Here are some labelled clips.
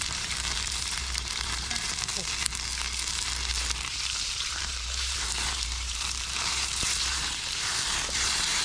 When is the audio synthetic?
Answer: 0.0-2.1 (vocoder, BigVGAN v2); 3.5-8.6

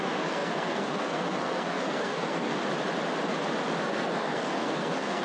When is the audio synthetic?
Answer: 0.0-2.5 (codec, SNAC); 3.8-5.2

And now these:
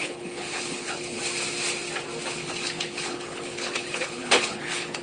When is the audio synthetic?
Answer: 0.0-1.2 (codec, HILCodec); 2.4-5.0

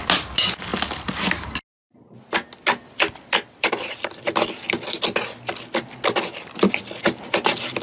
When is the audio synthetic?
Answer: none